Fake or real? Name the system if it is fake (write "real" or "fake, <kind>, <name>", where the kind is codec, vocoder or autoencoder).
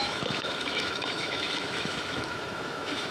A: fake, autoencoder, DAC-VAE